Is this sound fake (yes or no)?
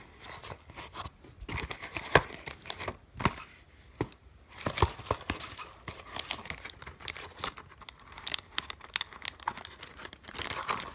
no